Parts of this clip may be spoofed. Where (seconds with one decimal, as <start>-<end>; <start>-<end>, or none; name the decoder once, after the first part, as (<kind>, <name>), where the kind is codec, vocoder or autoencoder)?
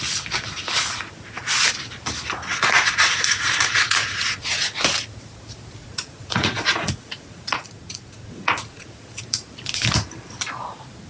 2.5-4.6 (vocoder, Vocos); 5.8-9.1